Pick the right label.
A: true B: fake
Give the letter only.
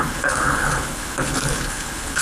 B